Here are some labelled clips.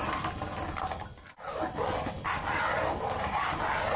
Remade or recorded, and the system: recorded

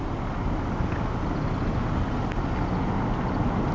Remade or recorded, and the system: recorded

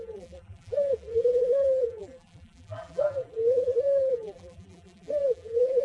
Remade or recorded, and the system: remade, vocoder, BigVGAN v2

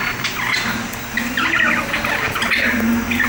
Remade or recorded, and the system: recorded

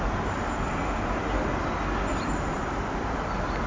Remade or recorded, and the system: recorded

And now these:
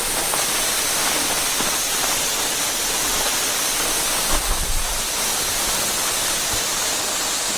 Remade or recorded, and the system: recorded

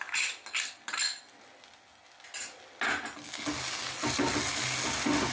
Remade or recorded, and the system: recorded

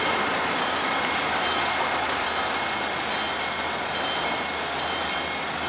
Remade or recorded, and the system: recorded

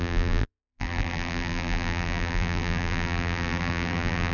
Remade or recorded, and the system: remade, vocoder, BigVGAN v2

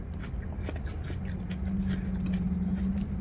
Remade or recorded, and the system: recorded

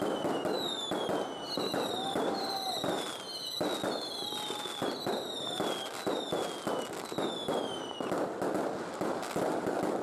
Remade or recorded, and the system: recorded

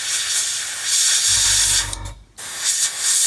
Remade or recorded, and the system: recorded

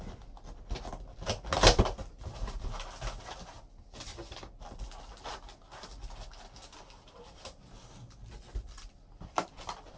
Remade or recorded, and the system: recorded